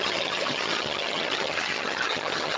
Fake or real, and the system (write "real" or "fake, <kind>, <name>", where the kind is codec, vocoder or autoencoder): fake, vocoder, HiFi-GAN